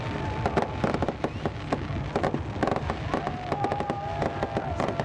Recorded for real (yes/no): yes